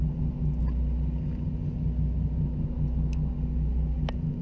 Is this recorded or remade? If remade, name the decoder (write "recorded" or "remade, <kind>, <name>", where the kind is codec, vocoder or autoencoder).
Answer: recorded